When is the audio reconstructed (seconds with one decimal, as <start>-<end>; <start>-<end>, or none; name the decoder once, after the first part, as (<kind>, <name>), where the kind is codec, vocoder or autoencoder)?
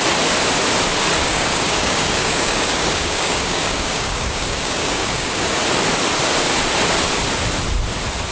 1.2-5.6 (codec, DAC)